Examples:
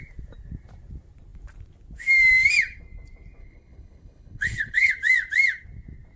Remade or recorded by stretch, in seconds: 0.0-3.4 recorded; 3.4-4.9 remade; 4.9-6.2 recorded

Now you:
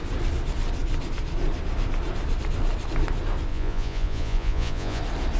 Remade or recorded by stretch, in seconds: 0.0-3.5 recorded; 3.5-5.0 remade; 5.0-5.4 recorded

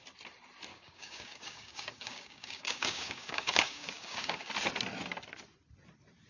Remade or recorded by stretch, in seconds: 0.0-0.7 recorded; 0.7-4.5 remade; 4.5-6.3 recorded

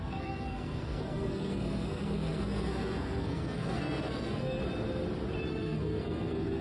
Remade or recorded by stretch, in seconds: 0.0-4.6 remade; 4.6-5.5 recorded; 5.5-6.6 remade

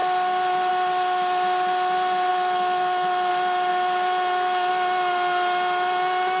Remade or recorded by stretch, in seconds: 0.0-2.3 recorded; 2.3-3.3 remade; 3.3-3.7 recorded; 3.7-4.7 remade; 4.7-6.4 recorded

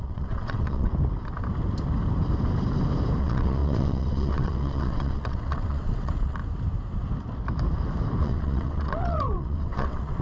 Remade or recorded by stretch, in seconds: 0.0-0.9 remade; 0.9-3.2 recorded; 3.2-6.4 remade; 6.4-8.2 recorded; 8.2-10.2 remade